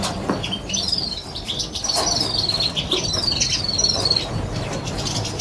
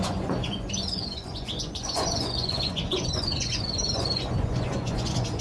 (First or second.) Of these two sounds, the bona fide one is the first